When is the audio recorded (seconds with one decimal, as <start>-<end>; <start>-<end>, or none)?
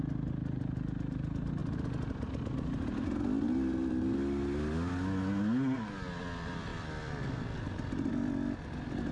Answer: 0.0-9.1